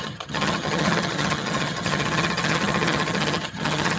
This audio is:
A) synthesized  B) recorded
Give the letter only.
A